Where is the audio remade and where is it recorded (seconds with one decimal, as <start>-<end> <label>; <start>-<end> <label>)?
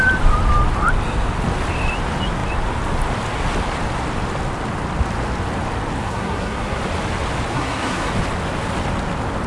0.0-6.0 recorded; 6.0-6.8 remade; 6.8-7.5 recorded; 7.5-8.1 remade; 8.1-9.5 recorded